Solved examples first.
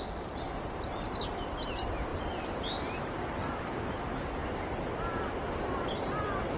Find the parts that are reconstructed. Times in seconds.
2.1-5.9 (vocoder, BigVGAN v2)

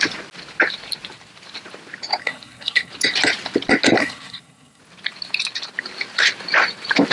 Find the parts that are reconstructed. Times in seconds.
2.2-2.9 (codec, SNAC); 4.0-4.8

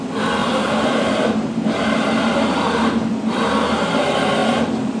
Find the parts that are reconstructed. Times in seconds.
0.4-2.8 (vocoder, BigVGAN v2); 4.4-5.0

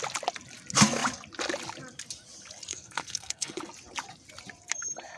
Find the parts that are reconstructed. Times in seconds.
2.7-3.6 (codec, SNAC)